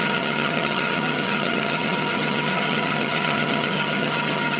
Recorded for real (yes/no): no